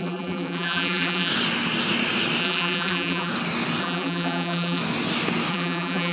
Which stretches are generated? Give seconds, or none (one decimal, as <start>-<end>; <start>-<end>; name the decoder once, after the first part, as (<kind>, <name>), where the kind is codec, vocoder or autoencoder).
0.0-1.3 (vocoder, BigVGAN v2); 2.4-3.3; 3.8-4.8; 5.5-6.1